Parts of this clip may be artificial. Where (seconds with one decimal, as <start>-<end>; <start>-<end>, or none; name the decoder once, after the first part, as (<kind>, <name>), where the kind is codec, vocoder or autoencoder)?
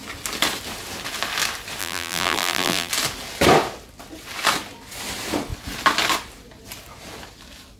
1.8-2.9 (vocoder, BigVGAN v2)